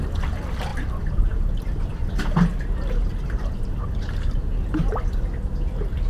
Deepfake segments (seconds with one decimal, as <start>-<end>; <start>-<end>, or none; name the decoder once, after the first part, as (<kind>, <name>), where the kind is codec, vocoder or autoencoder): 0.7-1.8 (vocoder, BigVGAN v2)